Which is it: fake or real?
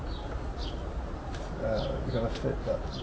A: real